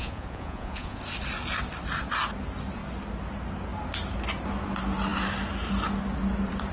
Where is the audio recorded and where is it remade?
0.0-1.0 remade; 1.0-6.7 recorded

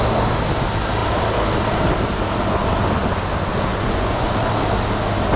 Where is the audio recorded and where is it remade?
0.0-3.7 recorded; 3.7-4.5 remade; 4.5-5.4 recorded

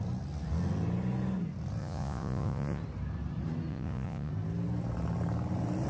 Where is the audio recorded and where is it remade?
0.0-1.8 recorded; 1.8-2.8 remade; 2.8-3.7 recorded; 3.7-4.3 remade; 4.3-5.9 recorded